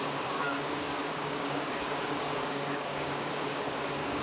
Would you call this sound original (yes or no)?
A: no